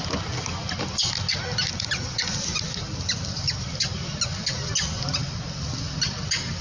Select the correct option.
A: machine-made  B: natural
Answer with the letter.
B